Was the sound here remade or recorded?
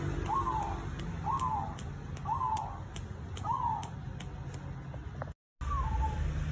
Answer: recorded